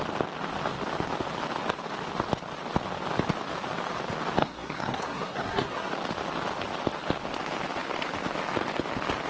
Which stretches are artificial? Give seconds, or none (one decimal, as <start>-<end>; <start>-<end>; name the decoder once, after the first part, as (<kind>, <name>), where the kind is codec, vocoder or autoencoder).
4.4-5.9 (codec, SNAC)